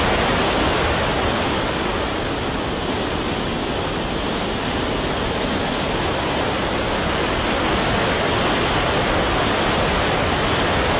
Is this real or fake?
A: real